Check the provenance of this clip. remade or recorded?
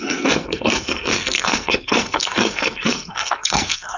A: remade